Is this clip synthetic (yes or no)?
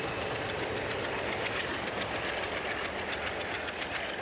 no